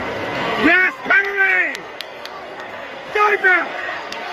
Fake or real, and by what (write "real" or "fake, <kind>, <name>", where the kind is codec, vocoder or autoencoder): fake, codec, SNAC